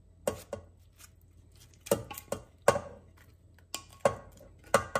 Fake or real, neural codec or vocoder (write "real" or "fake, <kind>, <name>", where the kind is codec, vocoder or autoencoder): real